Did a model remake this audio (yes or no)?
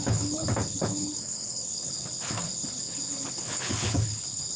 yes